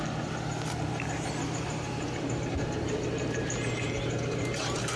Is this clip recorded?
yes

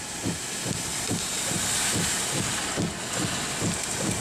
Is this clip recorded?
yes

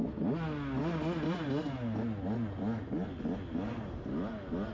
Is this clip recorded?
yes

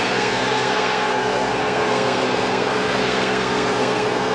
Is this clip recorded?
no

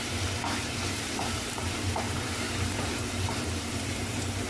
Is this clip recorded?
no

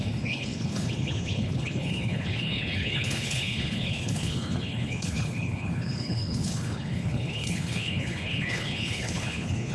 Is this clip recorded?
no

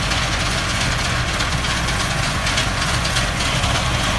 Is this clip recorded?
no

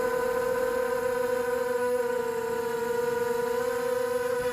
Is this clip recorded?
no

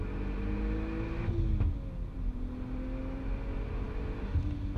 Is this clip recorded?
yes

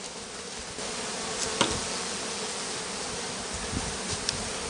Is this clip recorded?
yes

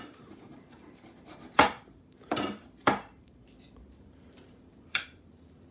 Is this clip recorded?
no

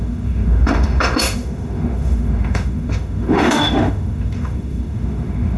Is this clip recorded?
no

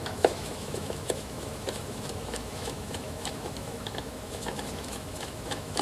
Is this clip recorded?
no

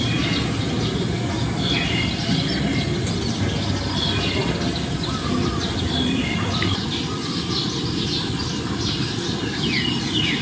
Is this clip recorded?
yes